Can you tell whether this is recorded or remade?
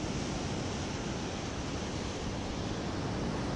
recorded